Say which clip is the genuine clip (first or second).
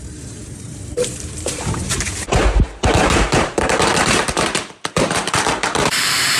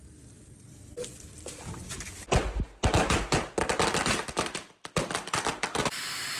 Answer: second